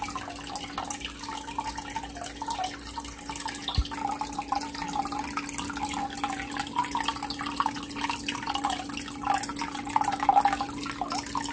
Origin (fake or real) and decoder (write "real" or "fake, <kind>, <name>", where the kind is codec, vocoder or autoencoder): real